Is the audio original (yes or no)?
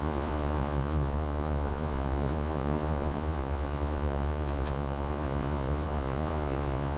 no